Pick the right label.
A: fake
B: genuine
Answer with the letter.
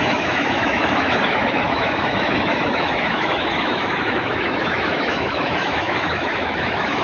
A